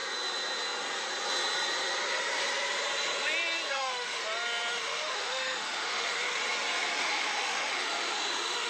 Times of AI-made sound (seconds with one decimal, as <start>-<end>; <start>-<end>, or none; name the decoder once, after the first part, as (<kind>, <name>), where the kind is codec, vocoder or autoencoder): 3.7-4.2 (autoencoder, DAC-VAE); 4.7-6.4; 7.0-8.7